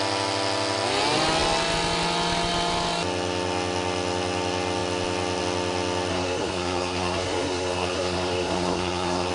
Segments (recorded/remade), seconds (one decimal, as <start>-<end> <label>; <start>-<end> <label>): 0.0-6.1 recorded; 6.1-9.3 remade